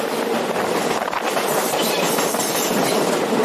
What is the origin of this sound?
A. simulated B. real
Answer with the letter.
B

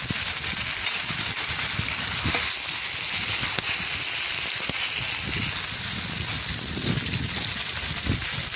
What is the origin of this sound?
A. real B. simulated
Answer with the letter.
A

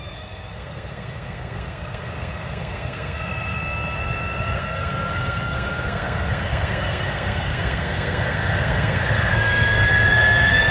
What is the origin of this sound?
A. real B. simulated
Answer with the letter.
B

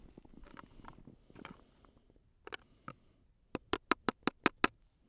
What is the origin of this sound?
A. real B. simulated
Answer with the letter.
A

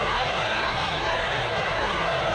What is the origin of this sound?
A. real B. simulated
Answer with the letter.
B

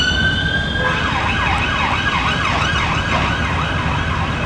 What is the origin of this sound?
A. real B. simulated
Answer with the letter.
A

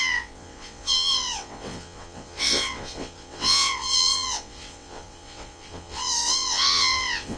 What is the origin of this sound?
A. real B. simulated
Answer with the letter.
B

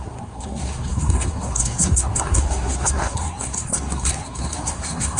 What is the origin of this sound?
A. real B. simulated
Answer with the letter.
B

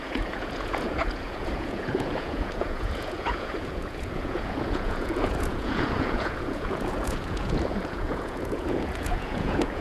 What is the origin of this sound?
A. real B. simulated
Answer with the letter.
B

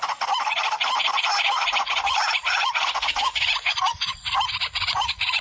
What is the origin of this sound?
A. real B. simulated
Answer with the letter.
B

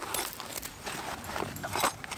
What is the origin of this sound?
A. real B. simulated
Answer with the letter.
A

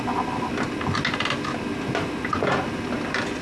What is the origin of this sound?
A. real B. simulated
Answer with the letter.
A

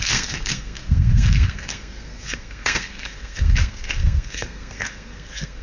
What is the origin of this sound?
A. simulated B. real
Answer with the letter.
A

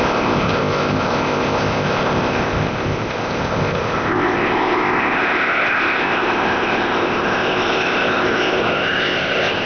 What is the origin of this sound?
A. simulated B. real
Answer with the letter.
A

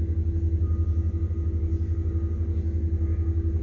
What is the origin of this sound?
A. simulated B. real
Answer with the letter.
B